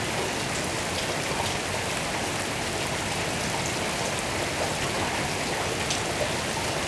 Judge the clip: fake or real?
real